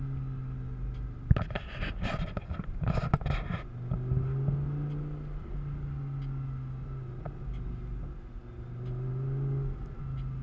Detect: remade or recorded recorded